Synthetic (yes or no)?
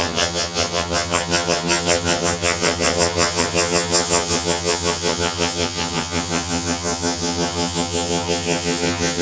yes